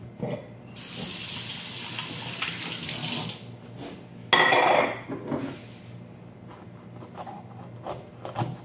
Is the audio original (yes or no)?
yes